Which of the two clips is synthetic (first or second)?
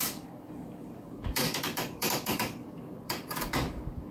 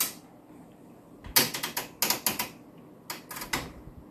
first